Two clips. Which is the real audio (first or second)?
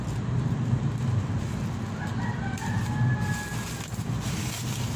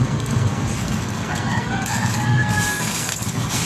first